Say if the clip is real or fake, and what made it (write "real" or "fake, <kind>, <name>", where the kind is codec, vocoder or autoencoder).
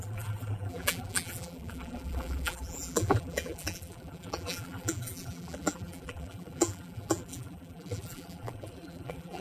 fake, vocoder, BigVGAN v2